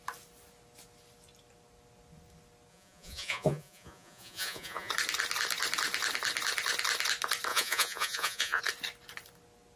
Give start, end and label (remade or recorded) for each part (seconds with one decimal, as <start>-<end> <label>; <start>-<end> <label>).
0.0-2.7 recorded; 2.7-4.9 remade; 4.9-7.5 recorded; 7.5-8.6 remade; 8.6-9.8 recorded